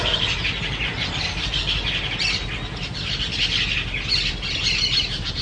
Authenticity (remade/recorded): recorded